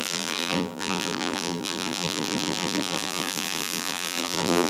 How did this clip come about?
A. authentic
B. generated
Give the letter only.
B